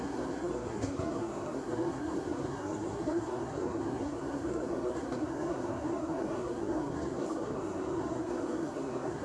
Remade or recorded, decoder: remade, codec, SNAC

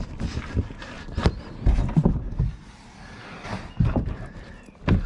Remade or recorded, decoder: recorded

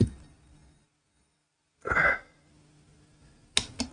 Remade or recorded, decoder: recorded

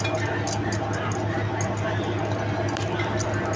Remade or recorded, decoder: recorded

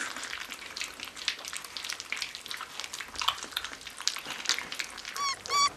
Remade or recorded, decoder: recorded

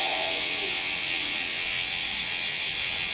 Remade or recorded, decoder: remade, vocoder, WaveNeXt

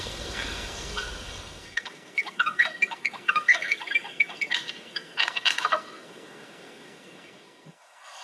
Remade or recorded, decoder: remade, codec, SNAC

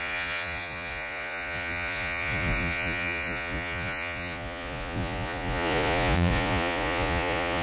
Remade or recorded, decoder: remade, vocoder, Vocos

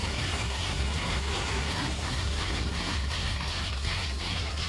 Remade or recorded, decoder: remade, codec, SNAC